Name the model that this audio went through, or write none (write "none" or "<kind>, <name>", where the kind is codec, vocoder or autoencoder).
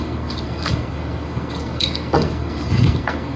codec, SNAC